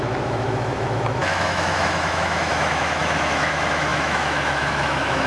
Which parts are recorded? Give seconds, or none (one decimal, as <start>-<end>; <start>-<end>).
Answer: none